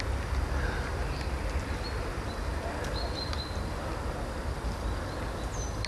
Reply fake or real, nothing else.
real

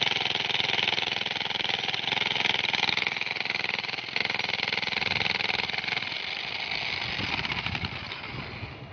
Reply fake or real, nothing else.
real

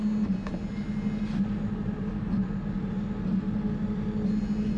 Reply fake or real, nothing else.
real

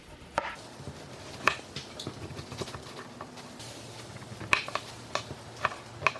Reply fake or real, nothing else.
real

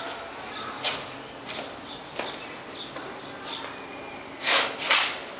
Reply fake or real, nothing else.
real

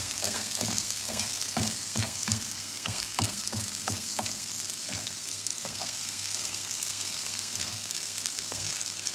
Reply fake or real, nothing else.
fake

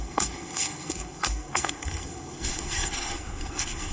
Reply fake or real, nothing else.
fake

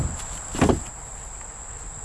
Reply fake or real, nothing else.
real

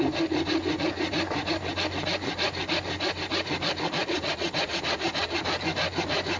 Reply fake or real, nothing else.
real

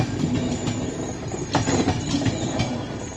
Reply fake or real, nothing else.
real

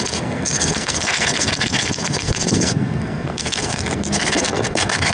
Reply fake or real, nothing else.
fake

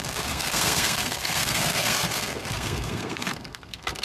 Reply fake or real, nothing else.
fake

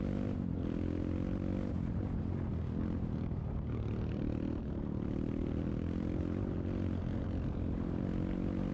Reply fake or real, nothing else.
real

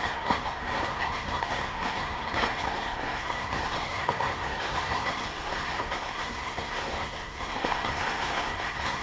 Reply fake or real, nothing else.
fake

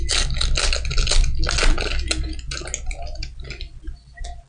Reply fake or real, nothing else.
real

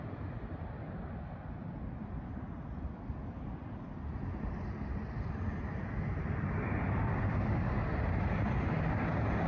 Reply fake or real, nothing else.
real